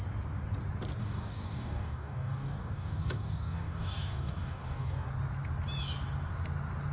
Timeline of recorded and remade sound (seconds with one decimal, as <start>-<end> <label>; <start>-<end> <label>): 0.0-1.0 recorded; 1.0-5.1 remade; 5.1-6.9 recorded